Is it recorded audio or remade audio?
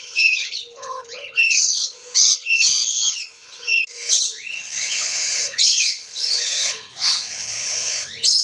remade